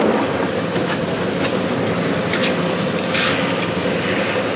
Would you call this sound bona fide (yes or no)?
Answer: yes